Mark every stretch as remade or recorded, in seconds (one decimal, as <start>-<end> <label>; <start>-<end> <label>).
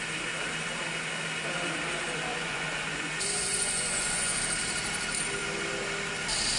0.0-2.3 recorded; 2.3-4.4 remade; 4.4-6.6 recorded